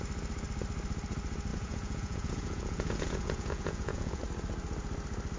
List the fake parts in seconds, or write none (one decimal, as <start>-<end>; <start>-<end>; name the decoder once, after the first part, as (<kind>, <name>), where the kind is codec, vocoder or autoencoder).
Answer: 1.5-4.2 (vocoder, Vocos)